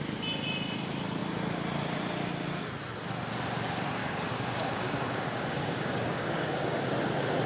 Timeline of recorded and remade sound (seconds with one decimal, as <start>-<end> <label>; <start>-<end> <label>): 0.0-4.0 recorded; 4.0-6.9 remade; 6.9-7.5 recorded